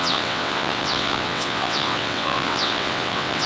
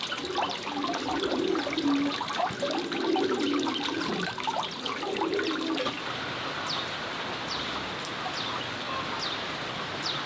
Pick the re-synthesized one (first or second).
first